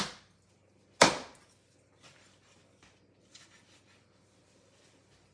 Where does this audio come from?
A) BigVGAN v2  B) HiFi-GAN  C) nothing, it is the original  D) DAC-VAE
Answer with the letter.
C